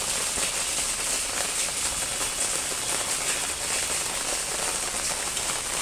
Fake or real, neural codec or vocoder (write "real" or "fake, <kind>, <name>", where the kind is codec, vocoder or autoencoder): real